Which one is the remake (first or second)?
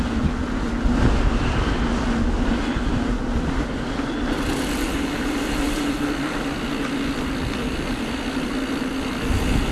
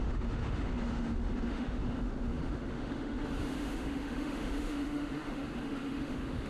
second